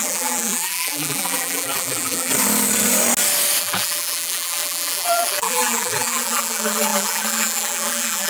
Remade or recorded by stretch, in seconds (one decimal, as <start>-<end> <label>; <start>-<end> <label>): 0.0-2.3 remade; 2.3-3.6 recorded; 3.6-8.3 remade